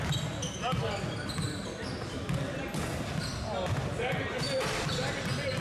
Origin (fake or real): real